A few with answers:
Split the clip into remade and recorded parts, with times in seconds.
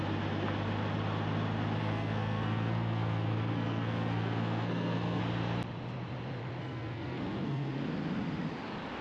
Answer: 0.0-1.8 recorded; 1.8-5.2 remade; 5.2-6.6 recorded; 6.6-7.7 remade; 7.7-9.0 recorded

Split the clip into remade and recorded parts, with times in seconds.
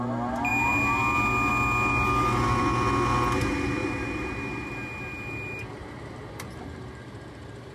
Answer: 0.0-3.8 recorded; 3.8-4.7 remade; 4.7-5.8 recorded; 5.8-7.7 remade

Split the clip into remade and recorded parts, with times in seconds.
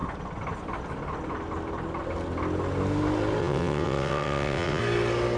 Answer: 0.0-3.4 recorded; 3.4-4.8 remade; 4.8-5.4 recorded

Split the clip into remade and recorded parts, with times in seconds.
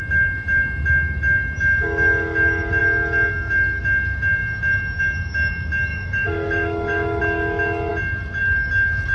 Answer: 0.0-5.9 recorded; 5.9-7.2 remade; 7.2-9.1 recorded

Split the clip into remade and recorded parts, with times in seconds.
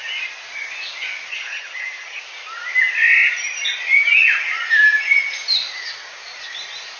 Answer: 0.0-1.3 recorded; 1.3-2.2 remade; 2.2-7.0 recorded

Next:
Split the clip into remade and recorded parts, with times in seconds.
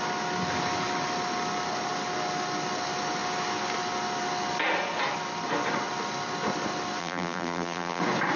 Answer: 0.0-7.0 recorded; 7.0-8.0 remade; 8.0-8.4 recorded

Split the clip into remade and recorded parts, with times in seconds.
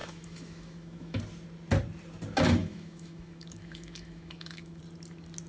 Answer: 0.0-1.2 remade; 1.2-2.6 recorded; 2.6-4.8 remade; 4.8-5.5 recorded